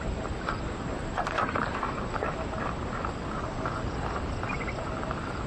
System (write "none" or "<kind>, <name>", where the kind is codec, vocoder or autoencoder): none